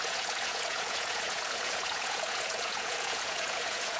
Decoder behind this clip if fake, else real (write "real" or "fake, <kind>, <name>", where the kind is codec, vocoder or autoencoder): fake, vocoder, Vocos